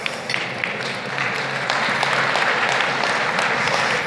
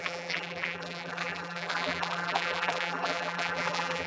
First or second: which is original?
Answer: first